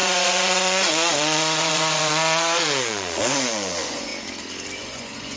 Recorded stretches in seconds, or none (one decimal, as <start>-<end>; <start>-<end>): 4.1-4.8